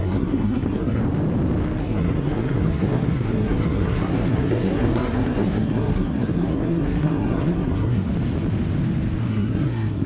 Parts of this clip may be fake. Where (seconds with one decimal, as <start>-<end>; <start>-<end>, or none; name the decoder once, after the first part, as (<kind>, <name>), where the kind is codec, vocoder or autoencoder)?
0.0-1.0 (codec, SNAC); 1.8-8.1; 9.2-10.1